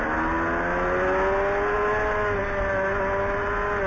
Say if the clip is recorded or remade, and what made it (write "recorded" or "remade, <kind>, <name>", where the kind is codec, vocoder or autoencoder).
recorded